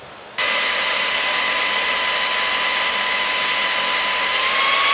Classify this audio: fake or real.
real